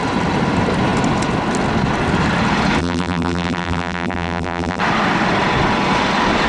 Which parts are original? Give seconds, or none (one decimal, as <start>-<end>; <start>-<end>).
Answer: 0.0-2.8; 4.8-6.5

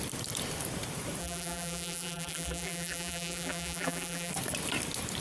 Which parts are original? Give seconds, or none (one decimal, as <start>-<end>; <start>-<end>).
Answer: 0.0-1.2; 4.3-5.2

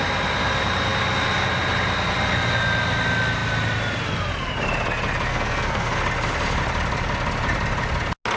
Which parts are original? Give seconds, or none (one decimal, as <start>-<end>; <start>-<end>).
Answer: 0.0-5.3; 6.0-8.4

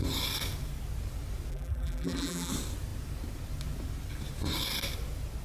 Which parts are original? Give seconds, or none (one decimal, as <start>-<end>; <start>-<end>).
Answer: 0.0-1.5; 2.5-5.4

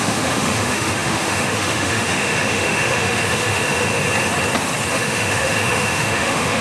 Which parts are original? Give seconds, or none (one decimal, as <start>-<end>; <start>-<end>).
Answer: 3.9-4.9